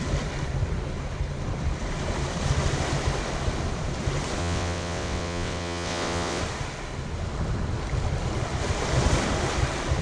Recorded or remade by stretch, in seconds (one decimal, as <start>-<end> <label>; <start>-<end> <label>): 0.0-4.4 recorded; 4.4-6.4 remade; 6.4-10.0 recorded